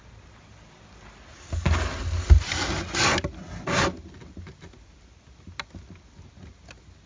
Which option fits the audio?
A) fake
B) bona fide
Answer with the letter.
B